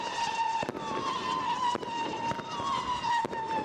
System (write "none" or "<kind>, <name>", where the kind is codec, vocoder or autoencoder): none